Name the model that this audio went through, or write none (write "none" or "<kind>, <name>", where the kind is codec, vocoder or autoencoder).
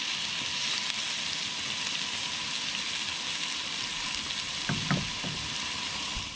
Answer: none